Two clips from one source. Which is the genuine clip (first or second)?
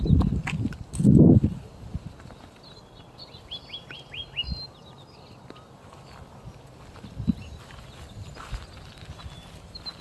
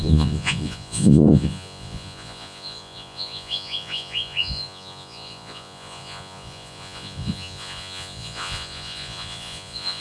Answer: first